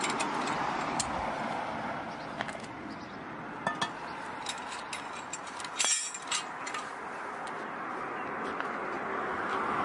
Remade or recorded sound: recorded